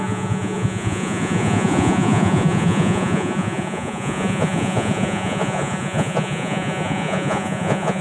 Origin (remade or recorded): remade